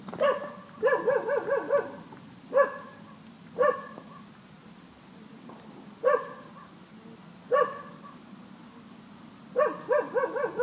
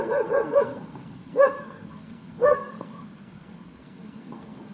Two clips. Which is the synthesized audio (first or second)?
second